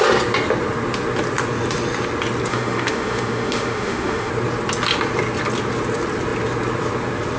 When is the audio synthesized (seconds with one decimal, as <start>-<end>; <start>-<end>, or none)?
2.5-4.3

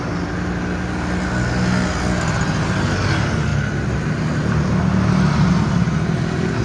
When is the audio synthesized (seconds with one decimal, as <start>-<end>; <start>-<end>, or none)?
none

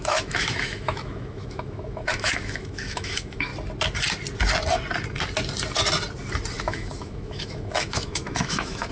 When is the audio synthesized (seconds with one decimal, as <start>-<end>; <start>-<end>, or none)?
0.0-3.5; 6.6-8.9

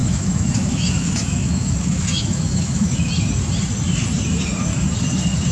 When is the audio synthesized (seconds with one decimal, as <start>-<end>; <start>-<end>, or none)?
0.0-3.1

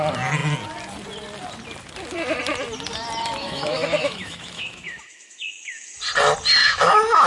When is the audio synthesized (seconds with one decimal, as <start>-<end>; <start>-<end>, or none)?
3.4-6.0; 6.6-7.3

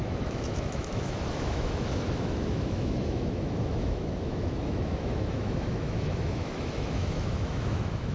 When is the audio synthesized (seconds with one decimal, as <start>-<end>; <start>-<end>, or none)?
0.0-8.1

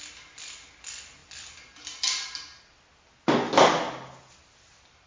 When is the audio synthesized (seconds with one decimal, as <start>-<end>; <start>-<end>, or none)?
none

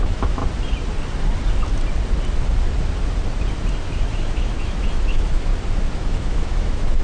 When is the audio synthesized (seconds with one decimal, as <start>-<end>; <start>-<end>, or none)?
0.0-0.4; 4.1-5.5; 6.1-7.0